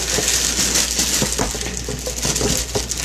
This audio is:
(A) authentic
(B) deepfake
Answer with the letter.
A